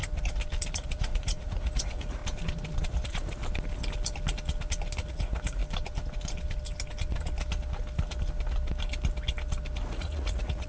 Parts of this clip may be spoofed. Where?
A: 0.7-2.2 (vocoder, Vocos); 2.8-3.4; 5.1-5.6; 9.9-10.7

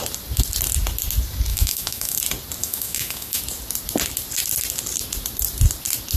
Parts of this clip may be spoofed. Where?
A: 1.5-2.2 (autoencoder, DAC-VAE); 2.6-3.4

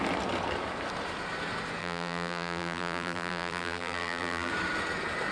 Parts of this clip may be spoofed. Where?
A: 1.8-4.5 (vocoder, BigVGAN v2)